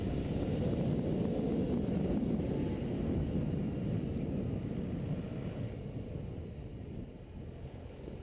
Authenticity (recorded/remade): recorded